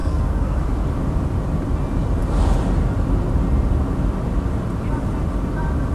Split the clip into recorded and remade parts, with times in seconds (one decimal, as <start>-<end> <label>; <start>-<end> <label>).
0.0-0.6 remade; 0.6-5.9 recorded